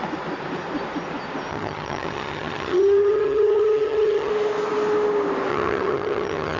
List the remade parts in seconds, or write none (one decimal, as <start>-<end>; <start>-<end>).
1.5-4.3; 5.5-6.6